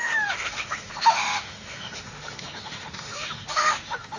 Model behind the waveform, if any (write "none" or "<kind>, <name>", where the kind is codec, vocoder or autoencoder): autoencoder, DAC-VAE